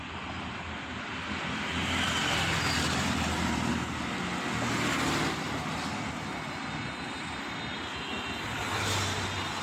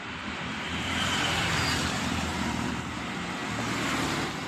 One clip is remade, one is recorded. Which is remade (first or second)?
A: second